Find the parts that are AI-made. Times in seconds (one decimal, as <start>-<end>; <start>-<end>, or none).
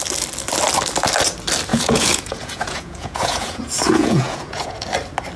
1.7-4.9